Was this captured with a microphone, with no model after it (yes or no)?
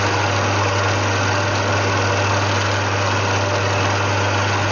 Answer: yes